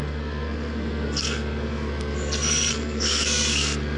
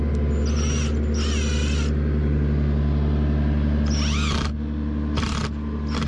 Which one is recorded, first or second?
second